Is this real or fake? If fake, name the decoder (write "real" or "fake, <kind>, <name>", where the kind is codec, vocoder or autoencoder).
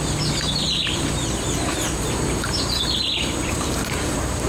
real